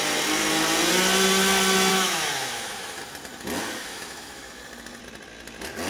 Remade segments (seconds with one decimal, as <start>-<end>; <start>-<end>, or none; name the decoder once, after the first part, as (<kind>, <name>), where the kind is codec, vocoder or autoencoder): 1.9-3.0 (autoencoder, DAC-VAE); 3.8-4.6